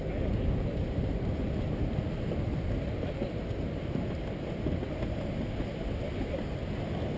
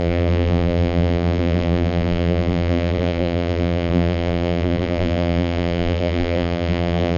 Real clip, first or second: first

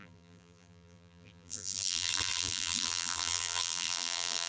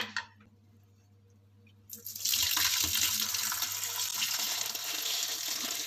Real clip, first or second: second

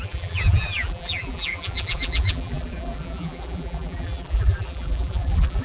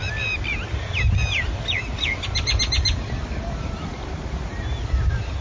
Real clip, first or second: second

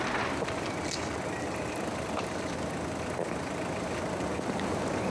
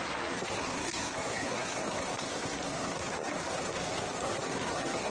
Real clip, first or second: first